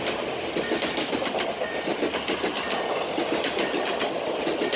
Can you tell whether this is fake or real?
real